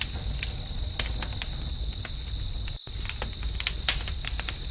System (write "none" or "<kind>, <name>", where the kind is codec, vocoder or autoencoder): none